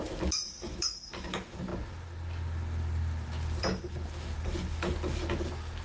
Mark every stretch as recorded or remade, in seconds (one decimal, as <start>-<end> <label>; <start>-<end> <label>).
0.0-5.8 recorded